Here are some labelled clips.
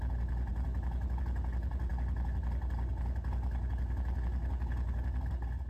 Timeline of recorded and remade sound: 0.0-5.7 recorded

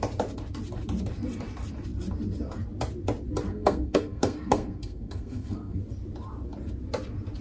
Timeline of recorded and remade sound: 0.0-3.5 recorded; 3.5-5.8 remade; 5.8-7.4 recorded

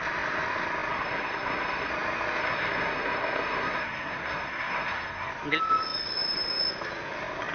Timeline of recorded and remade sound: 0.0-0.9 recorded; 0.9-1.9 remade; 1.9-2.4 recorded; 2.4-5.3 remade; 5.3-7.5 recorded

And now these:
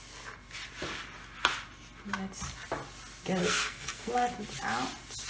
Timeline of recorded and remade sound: 0.0-3.4 recorded; 3.4-4.1 remade; 4.1-5.3 recorded

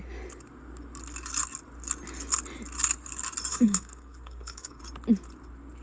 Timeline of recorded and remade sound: 0.0-3.5 recorded; 3.5-4.8 remade; 4.8-5.8 recorded